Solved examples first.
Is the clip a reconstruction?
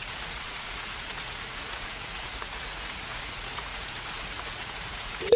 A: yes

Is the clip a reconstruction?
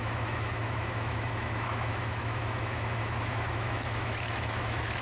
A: yes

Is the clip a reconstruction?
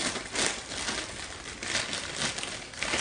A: no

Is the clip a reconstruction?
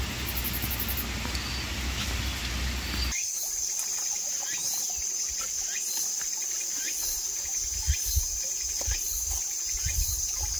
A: no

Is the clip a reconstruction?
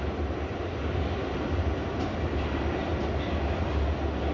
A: no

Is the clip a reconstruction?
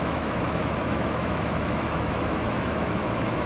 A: yes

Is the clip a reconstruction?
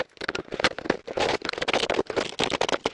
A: no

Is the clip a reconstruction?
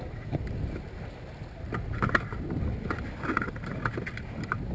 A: no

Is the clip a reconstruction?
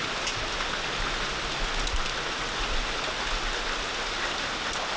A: no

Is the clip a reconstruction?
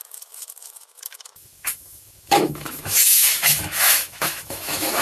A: yes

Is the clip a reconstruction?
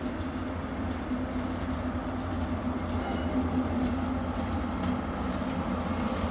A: no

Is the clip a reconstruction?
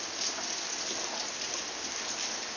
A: no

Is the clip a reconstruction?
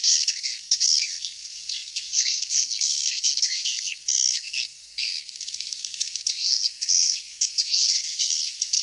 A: yes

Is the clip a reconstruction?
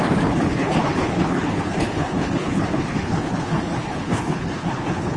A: yes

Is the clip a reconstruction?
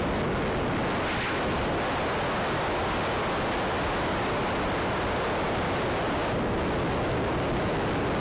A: no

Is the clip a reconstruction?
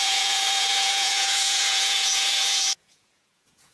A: yes